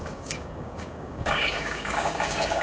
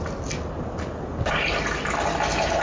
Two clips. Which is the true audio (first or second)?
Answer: second